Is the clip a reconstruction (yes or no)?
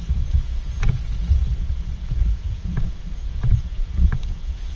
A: yes